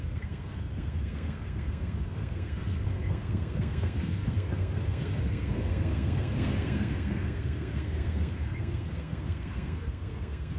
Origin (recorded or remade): remade